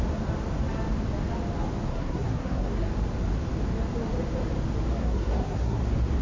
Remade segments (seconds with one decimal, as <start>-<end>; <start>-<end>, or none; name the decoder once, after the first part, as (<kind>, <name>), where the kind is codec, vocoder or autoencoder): 1.9-2.9 (codec, SNAC); 5.0-5.8